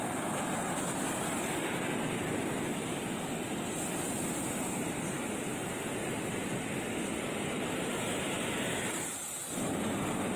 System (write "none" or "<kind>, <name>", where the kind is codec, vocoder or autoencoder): none